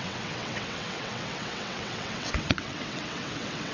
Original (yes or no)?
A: no